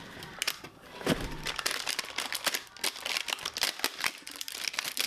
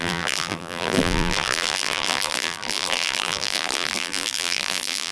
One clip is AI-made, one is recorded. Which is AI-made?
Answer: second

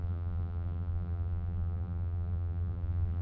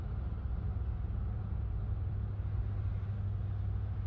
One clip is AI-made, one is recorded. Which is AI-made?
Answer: first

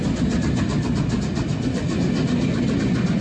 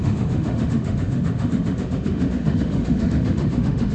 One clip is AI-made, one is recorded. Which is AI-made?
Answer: second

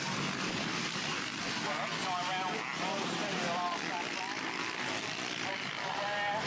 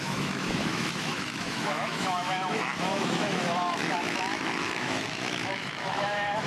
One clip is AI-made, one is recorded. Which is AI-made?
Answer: second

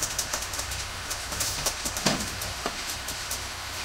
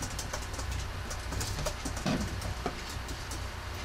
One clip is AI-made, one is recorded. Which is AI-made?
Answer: first